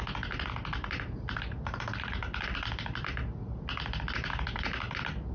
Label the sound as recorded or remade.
recorded